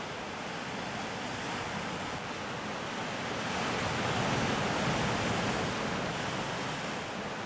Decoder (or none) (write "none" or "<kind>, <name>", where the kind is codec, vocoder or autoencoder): none